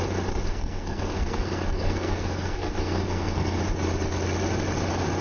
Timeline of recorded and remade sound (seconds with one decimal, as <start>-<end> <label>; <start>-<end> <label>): 0.0-0.5 recorded; 0.5-3.6 remade; 3.6-5.2 recorded